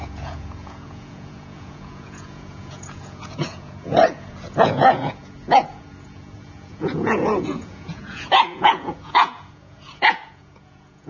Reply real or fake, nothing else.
fake